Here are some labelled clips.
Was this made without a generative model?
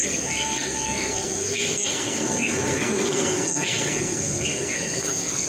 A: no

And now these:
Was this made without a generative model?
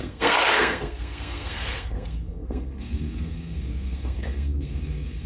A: no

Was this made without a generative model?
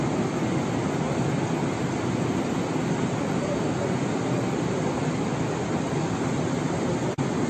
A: yes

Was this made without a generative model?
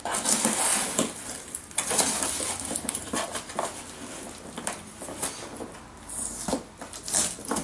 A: yes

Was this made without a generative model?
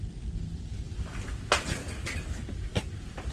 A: yes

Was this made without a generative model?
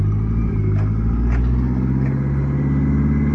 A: yes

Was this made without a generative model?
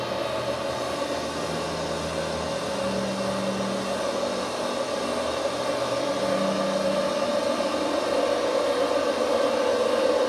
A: yes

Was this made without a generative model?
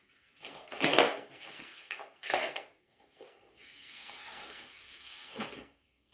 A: no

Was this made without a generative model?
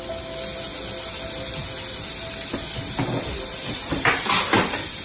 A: yes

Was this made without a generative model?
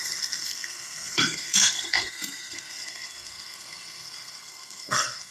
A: no